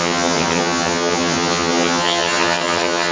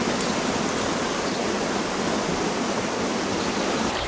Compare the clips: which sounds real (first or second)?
second